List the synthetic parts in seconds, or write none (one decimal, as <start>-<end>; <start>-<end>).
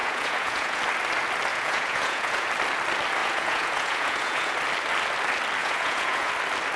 0.0-0.8; 1.5-2.5; 3.2-4.5; 5.6-6.3